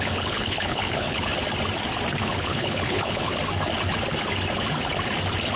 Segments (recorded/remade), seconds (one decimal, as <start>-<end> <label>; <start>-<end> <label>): 0.0-1.3 remade; 1.3-2.2 recorded; 2.2-3.3 remade; 3.3-5.6 recorded